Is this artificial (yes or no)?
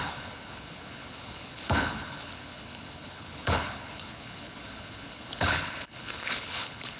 yes